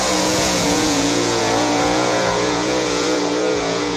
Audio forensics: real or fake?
fake